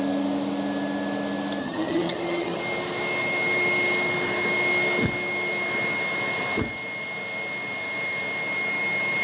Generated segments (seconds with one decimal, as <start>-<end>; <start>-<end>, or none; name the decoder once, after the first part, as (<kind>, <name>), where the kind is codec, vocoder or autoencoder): 1.6-2.6 (vocoder, HiFi-GAN)